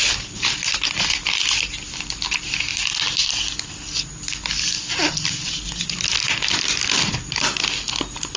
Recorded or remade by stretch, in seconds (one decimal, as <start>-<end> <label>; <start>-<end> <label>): 0.0-8.4 recorded